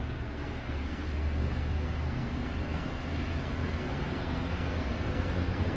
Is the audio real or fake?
fake